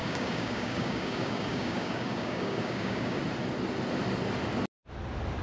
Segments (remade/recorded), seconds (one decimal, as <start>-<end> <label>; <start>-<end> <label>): 0.0-3.2 remade; 3.2-5.4 recorded